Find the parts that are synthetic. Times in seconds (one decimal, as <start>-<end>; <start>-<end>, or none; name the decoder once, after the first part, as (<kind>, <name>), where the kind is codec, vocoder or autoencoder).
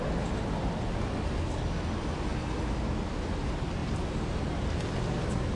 3.8-4.8 (vocoder, BigVGAN v2)